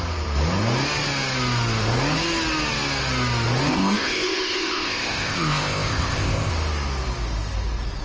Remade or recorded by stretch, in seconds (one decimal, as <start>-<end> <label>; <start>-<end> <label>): 0.0-3.7 recorded; 3.7-6.5 remade; 6.5-8.0 recorded